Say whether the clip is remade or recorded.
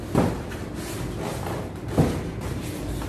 recorded